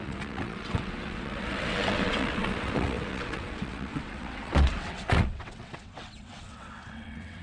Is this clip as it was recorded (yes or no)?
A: no